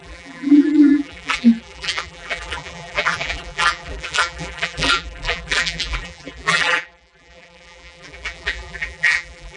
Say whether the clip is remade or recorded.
remade